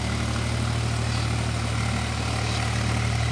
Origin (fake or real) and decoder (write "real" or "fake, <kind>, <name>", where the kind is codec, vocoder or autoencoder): real